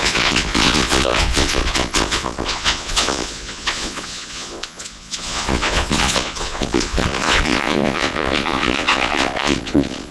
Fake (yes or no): yes